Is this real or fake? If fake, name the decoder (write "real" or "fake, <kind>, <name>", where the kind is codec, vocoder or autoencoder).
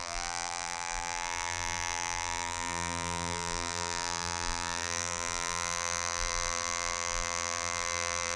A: fake, vocoder, BigVGAN v2